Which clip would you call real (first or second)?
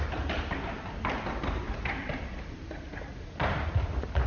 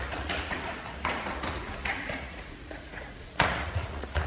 first